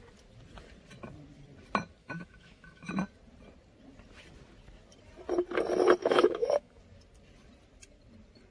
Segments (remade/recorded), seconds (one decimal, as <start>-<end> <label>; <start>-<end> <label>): 0.0-2.0 recorded; 2.0-2.9 remade; 2.9-6.0 recorded; 6.0-6.8 remade; 6.8-8.5 recorded